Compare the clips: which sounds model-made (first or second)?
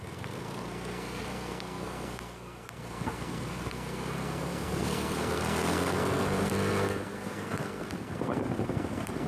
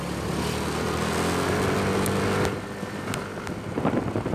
first